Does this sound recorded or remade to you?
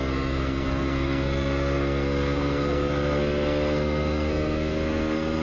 remade